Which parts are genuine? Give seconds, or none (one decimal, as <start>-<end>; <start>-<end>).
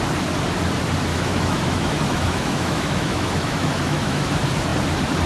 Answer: 0.0-1.1; 4.3-5.3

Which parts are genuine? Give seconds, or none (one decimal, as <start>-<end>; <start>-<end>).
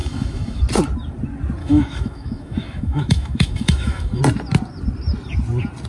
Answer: 0.6-1.6; 4.2-5.9